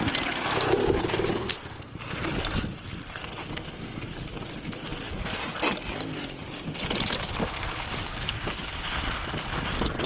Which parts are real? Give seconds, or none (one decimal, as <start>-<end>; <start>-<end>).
0.0-1.3; 1.9-3.4; 4.0-10.1